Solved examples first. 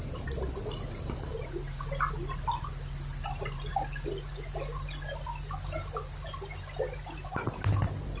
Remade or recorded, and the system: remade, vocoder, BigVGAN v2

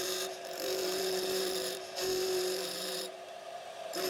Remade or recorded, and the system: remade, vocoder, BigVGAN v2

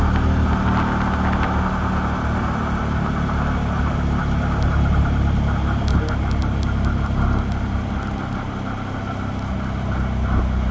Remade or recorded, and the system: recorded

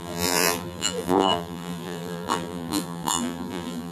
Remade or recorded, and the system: remade, vocoder, BigVGAN v2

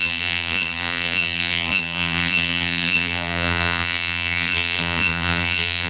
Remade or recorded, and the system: remade, vocoder, BigVGAN v2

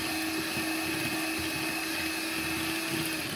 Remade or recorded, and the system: recorded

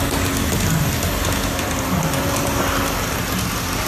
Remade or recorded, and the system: recorded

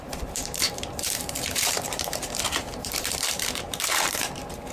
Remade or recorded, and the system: remade, vocoder, BigVGAN v2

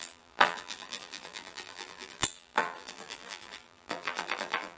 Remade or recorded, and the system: remade, vocoder, BigVGAN v2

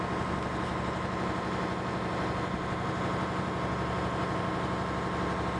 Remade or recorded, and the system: recorded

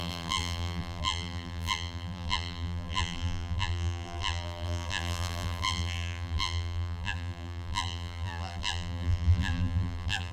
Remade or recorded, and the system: remade, vocoder, BigVGAN v2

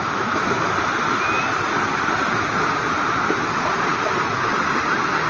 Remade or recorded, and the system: recorded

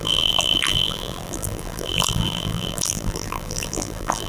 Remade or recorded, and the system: remade, vocoder, BigVGAN v2